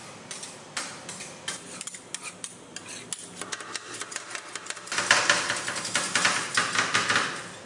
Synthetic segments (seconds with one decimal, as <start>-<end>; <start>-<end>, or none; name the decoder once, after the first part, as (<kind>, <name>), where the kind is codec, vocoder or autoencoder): none